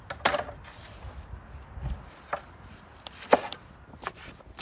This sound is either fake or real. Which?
real